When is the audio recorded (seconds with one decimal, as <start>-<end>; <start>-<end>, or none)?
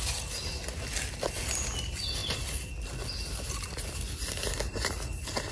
0.0-5.5